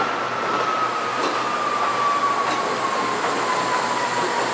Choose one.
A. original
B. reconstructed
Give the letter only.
A